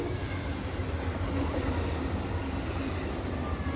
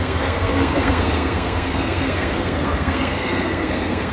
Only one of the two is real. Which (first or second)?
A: first